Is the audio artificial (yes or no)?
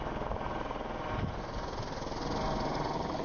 no